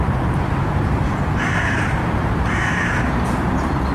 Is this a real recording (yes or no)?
no